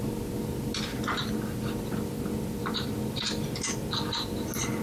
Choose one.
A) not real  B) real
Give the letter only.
B